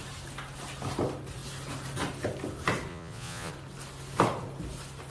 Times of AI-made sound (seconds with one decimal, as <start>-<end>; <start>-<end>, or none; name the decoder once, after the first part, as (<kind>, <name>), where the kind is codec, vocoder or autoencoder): 2.9-3.5 (vocoder, Vocos)